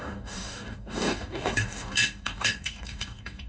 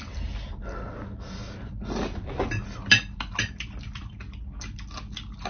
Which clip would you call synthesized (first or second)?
first